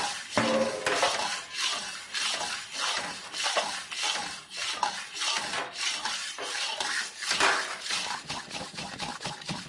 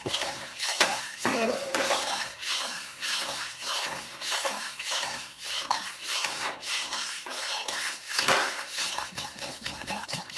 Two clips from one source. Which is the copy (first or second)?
second